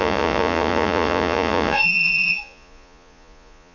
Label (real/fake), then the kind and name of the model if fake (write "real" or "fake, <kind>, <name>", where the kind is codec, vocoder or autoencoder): fake, vocoder, Vocos